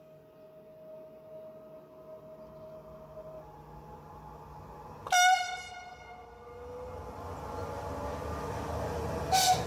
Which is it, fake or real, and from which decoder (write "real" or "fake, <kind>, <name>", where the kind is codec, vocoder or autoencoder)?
real